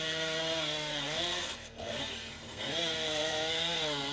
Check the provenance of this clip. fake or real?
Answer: fake